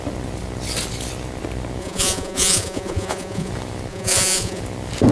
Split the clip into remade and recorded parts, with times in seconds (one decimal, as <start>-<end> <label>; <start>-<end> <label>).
0.0-1.8 recorded; 1.8-3.5 remade; 3.5-3.9 recorded; 3.9-4.6 remade; 4.6-5.1 recorded